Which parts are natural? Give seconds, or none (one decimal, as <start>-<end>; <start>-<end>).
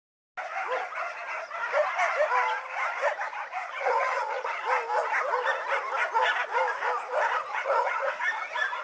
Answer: 0.0-3.6; 4.6-7.5; 8.1-8.8